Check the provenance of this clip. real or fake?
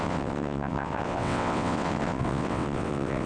fake